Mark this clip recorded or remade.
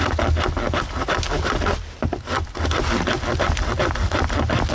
recorded